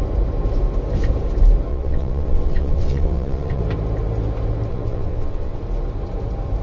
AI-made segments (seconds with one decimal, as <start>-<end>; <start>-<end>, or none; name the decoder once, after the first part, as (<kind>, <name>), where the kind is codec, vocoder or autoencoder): 1.7-3.6 (vocoder, WaveNeXt); 4.7-5.6